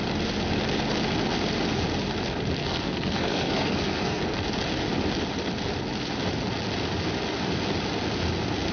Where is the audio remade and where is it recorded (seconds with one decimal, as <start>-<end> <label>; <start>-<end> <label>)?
0.0-2.6 recorded; 2.6-4.2 remade; 4.2-8.7 recorded